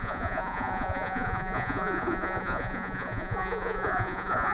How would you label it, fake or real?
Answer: fake